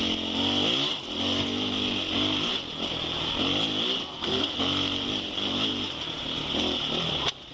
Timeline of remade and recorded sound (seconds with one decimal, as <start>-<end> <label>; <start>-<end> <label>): 0.0-4.0 recorded; 4.0-4.6 remade; 4.6-7.5 recorded